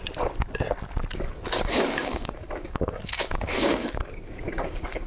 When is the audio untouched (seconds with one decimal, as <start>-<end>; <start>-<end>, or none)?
0.0-1.5